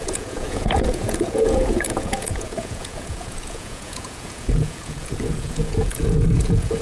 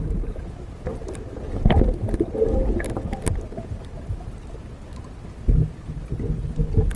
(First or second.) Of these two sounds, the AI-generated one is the first